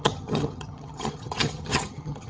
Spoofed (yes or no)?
yes